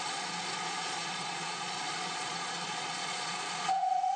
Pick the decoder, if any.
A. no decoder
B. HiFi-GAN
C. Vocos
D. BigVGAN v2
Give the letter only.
C